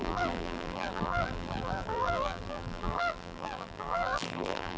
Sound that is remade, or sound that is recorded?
remade